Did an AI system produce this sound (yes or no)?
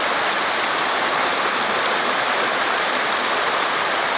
no